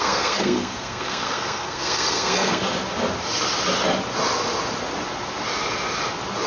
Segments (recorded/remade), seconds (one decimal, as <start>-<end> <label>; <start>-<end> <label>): 0.0-2.6 remade; 2.6-6.5 recorded